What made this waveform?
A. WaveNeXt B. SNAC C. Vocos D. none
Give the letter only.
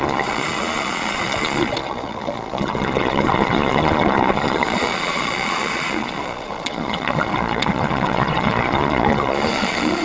C